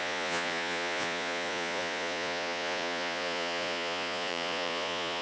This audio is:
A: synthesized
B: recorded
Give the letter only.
A